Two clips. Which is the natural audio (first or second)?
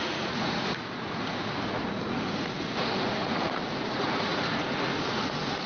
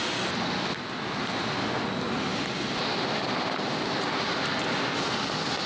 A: second